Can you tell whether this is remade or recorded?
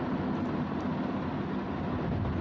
recorded